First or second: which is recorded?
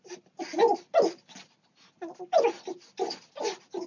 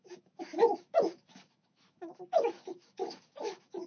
first